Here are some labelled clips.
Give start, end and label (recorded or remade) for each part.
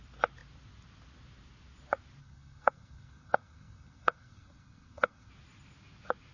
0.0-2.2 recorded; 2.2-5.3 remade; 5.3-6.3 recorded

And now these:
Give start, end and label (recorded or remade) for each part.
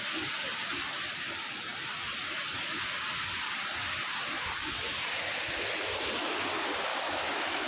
0.0-6.9 recorded; 6.9-7.7 remade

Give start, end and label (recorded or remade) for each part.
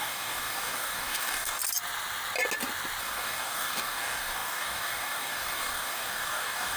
0.0-1.6 remade; 1.6-3.0 recorded; 3.0-6.8 remade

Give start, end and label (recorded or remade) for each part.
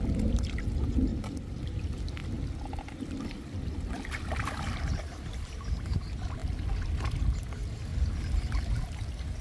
0.0-9.4 recorded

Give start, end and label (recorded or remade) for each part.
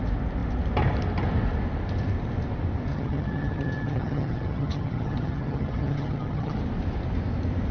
0.0-2.9 recorded; 2.9-6.6 remade; 6.6-7.7 recorded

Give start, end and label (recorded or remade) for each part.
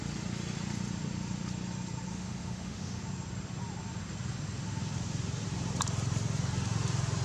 0.0-2.1 recorded; 2.1-3.0 remade; 3.0-7.2 recorded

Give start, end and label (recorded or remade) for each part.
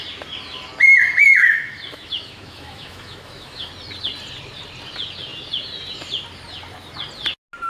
0.0-1.4 recorded; 1.4-3.7 remade; 3.7-7.7 recorded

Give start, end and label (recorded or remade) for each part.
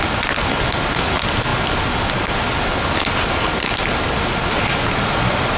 0.0-5.6 recorded